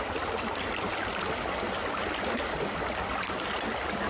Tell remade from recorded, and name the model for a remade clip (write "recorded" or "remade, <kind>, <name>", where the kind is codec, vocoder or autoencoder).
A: recorded